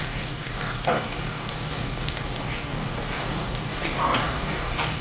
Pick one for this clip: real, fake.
fake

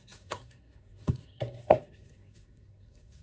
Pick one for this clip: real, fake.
fake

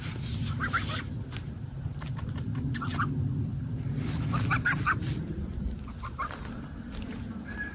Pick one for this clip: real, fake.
real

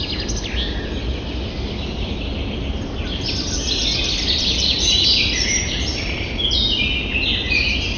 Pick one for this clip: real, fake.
real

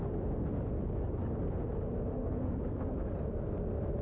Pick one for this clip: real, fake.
real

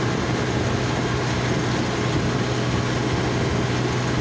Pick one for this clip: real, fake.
real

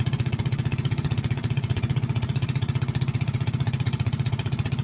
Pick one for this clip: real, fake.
fake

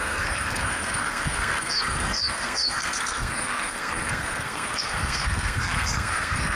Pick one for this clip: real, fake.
fake